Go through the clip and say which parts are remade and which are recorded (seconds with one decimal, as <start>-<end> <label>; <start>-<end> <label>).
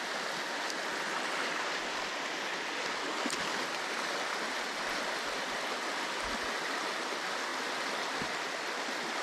0.0-9.2 recorded